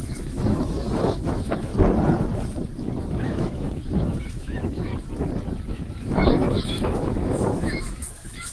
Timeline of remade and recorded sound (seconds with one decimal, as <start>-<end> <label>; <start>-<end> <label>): 0.0-1.7 remade; 1.7-3.0 recorded; 3.0-4.9 remade; 4.9-5.7 recorded; 5.7-8.5 remade

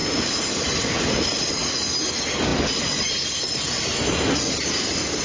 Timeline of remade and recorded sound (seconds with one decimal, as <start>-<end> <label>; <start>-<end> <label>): 0.0-5.2 recorded

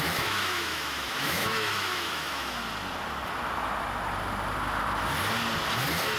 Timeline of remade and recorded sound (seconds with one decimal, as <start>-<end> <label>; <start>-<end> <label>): 0.0-2.6 remade; 2.6-6.2 recorded

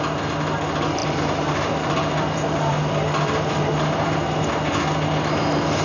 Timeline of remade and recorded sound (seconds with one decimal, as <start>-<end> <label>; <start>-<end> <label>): 0.0-1.0 recorded; 1.0-4.5 remade; 4.5-5.8 recorded

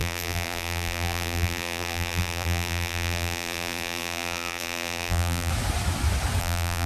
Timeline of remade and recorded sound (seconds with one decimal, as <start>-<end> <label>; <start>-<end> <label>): 0.0-5.5 remade; 5.5-6.4 recorded; 6.4-6.9 remade

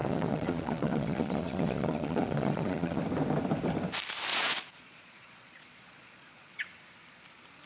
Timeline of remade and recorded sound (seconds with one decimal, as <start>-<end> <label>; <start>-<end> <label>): 0.0-3.0 remade; 3.0-4.3 recorded; 4.3-6.6 remade; 6.6-7.7 recorded

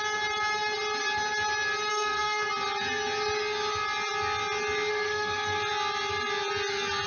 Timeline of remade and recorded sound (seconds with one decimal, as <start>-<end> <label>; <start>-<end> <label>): 0.0-1.9 recorded; 1.9-2.5 remade; 2.5-4.9 recorded; 4.9-5.6 remade; 5.6-7.1 recorded